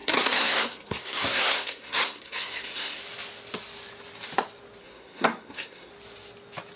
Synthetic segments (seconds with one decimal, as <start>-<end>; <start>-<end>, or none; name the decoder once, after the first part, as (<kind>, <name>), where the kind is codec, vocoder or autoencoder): 0.0-3.0 (codec, SNAC); 4.8-5.9